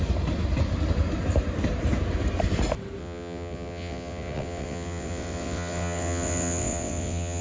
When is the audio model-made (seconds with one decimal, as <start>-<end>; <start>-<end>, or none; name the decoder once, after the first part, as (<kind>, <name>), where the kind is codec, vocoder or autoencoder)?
3.0-7.4 (vocoder, WaveNeXt)